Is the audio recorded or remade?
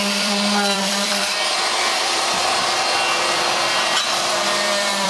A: remade